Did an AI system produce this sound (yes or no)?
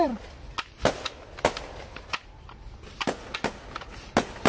no